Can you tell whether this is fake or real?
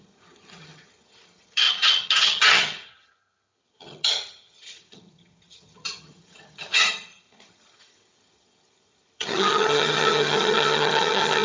fake